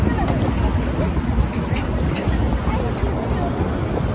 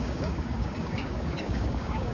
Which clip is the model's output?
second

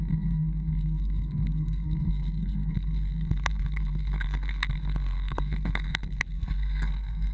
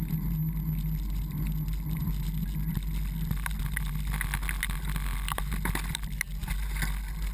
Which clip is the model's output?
first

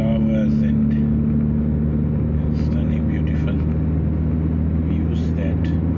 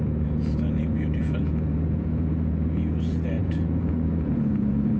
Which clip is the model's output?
second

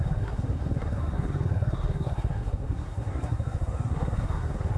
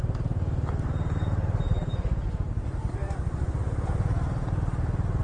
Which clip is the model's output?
first